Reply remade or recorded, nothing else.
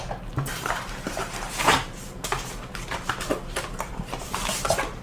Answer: remade